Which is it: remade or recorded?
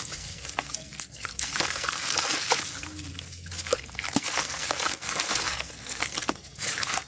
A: remade